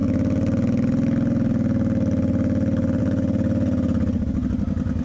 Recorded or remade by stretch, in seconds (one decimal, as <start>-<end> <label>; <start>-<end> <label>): 0.0-5.0 recorded